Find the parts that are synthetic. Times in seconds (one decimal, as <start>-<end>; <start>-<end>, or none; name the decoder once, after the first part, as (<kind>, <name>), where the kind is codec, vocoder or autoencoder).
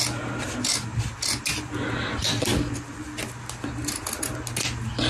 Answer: none